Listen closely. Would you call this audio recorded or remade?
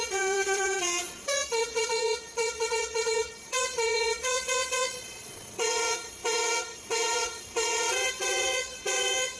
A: remade